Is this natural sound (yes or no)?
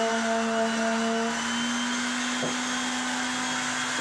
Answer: yes